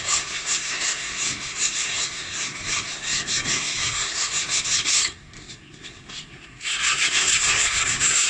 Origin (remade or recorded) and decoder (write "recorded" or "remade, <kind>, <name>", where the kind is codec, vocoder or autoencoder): remade, codec, SNAC